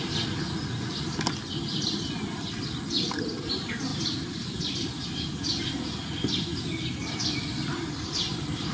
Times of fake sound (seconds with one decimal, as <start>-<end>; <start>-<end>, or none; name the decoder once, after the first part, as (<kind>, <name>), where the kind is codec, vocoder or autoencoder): 3.9-5.0 (vocoder, BigVGAN v2); 7.0-8.7